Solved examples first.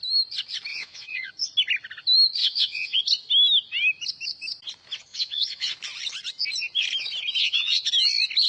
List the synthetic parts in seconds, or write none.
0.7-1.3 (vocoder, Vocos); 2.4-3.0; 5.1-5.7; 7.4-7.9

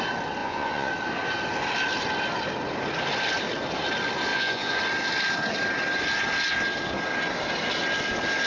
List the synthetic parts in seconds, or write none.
0.4-0.9 (vocoder, Vocos); 4.3-4.8

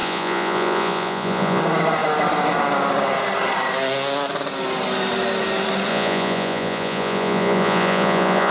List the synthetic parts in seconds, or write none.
0.0-1.6 (vocoder, Vocos); 5.9-8.5

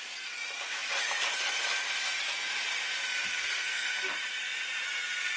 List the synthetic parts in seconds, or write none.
3.3-4.1 (codec, SNAC)